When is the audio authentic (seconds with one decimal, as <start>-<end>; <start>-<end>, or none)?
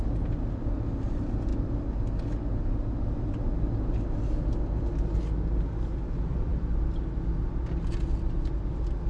0.0-9.1